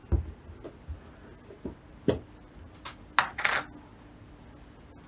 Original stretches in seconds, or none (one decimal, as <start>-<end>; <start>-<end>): 0.0-5.1